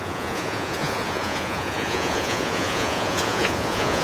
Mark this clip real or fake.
fake